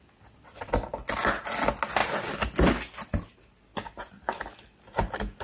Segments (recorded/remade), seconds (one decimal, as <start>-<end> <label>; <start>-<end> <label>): 0.0-5.4 recorded